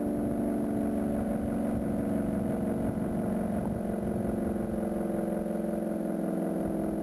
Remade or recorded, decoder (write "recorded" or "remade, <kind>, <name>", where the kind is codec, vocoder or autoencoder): recorded